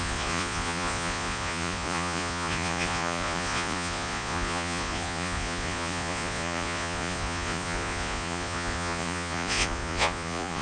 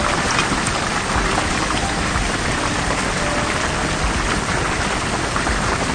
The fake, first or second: first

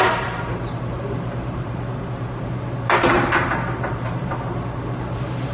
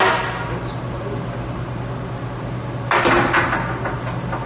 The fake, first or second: first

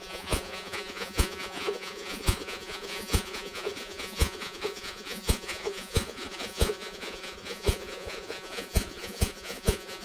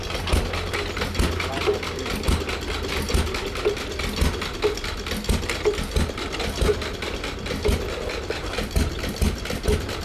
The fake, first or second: first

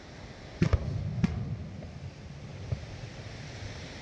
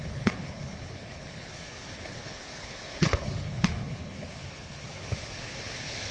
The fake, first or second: second